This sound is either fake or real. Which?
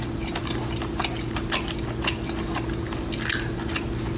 real